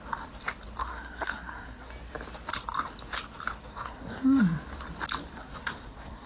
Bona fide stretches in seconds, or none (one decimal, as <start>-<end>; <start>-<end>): 0.0-0.8; 1.9-3.7; 4.4-5.3